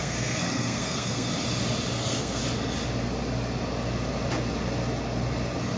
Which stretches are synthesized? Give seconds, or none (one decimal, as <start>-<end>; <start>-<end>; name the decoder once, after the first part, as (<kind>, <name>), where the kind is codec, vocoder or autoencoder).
0.0-1.3 (codec, SNAC); 1.9-2.4